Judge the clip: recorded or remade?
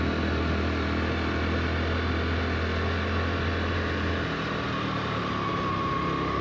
recorded